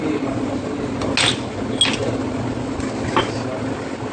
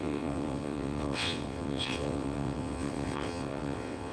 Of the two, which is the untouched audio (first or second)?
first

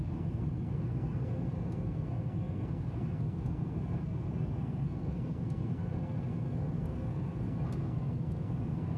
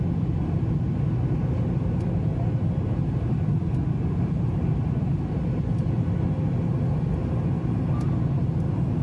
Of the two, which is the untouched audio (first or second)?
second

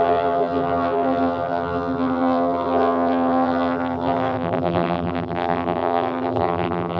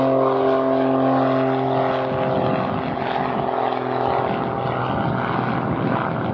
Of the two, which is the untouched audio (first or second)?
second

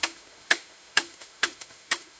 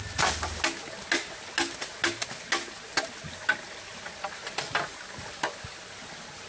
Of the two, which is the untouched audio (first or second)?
second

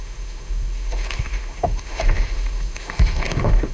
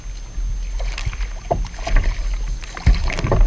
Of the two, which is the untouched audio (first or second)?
second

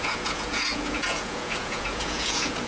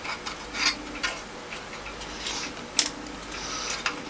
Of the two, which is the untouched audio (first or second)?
second